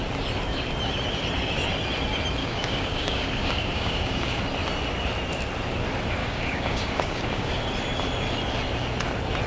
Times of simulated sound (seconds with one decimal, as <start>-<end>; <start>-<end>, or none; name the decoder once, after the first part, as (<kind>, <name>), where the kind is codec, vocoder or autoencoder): 2.4-4.4 (codec, DAC); 6.2-7.5